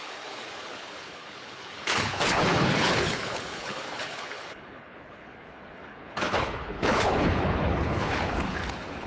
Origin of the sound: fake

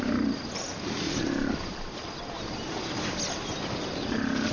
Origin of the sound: real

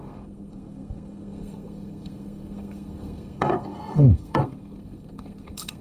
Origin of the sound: fake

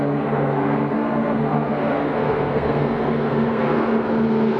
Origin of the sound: fake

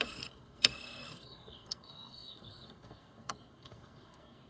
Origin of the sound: fake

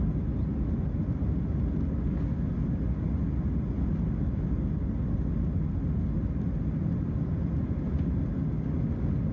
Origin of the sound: real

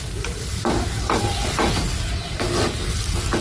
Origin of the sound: real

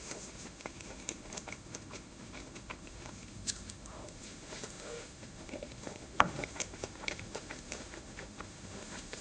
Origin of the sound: fake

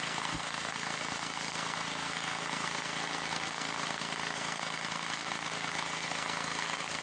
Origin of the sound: fake